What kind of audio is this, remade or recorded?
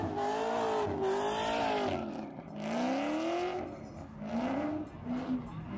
recorded